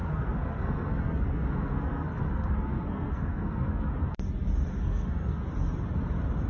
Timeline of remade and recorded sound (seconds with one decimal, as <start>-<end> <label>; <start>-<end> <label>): 0.0-3.9 remade; 3.9-4.8 recorded; 4.8-5.4 remade; 5.4-6.5 recorded